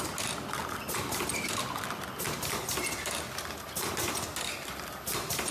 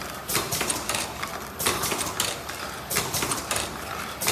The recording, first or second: first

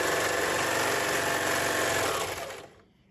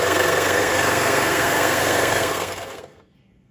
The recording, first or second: first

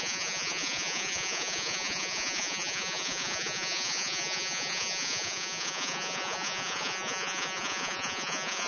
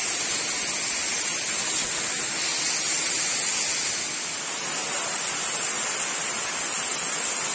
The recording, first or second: second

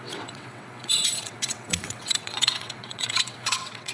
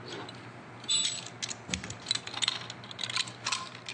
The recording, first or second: second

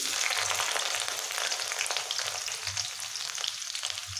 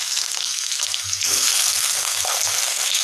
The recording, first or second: first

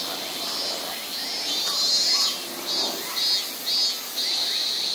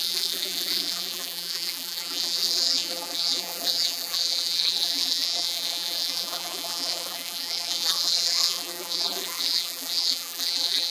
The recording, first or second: first